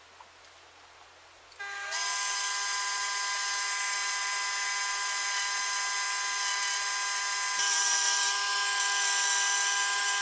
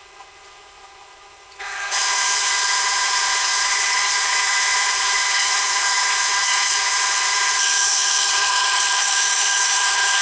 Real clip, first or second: first